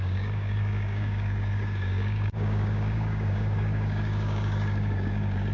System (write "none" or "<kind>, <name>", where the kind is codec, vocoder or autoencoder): codec, DAC